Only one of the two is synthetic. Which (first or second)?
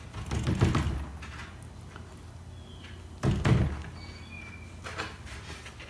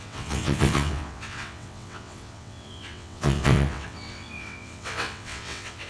second